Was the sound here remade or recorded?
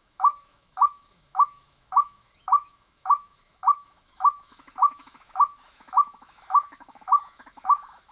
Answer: remade